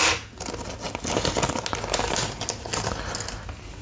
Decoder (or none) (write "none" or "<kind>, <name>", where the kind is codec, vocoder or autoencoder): none